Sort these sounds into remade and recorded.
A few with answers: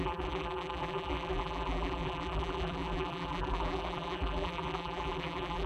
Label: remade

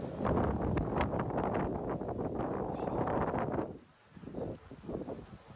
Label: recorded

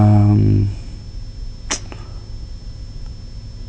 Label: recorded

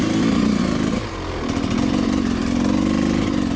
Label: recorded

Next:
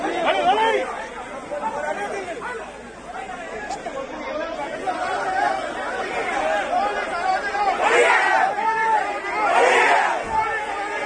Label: recorded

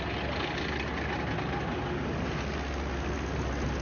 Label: recorded